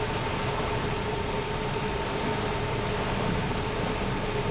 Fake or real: real